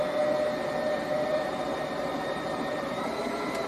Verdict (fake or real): fake